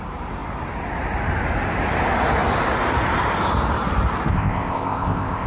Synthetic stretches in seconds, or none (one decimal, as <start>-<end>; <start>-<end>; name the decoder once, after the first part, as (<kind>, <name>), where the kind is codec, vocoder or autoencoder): 4.3-5.5 (codec, ZipCodec)